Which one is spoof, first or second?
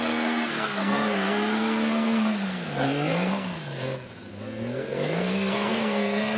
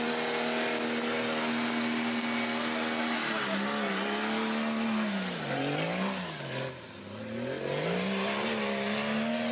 first